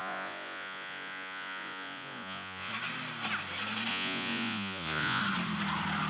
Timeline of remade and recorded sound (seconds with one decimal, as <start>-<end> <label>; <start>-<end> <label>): 0.0-2.7 remade; 2.7-3.9 recorded; 3.9-5.2 remade; 5.2-6.1 recorded